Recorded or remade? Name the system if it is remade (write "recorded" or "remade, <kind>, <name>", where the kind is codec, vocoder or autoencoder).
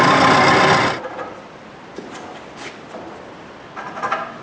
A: remade, vocoder, BigVGAN v2